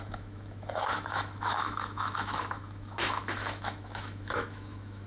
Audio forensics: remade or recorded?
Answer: remade